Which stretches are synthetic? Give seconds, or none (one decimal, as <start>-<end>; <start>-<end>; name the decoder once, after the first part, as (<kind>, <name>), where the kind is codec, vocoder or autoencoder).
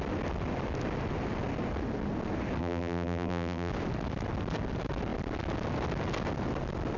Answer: 2.6-3.7 (vocoder, BigVGAN v2)